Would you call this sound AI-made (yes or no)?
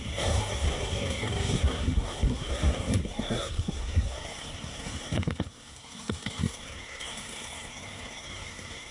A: yes